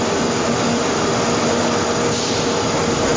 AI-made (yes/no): no